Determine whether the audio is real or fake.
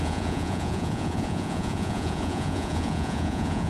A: fake